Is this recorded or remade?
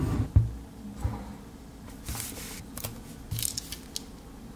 recorded